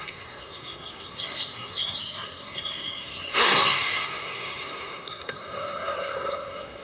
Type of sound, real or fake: fake